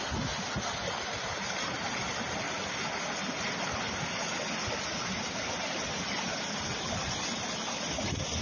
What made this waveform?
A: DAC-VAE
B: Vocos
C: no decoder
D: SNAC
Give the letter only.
C